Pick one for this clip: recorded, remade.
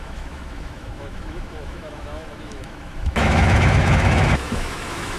remade